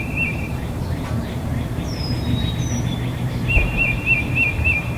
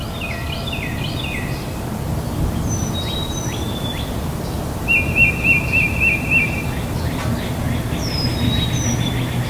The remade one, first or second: first